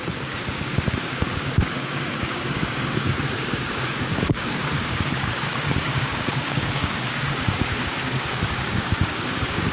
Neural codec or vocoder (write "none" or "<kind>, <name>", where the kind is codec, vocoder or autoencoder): codec, DAC